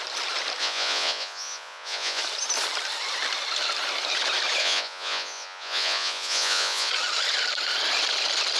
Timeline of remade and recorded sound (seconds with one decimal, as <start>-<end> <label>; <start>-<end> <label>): 0.0-0.6 recorded; 0.6-2.2 remade; 2.2-4.6 recorded; 4.6-6.9 remade; 6.9-8.6 recorded